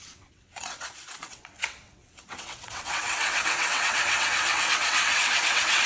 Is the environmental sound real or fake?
fake